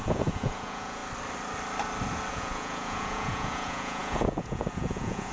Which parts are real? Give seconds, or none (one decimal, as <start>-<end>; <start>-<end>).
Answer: 1.0-2.3